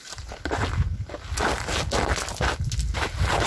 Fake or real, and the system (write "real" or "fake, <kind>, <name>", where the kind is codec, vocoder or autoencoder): real